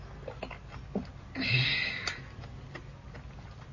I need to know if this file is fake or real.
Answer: real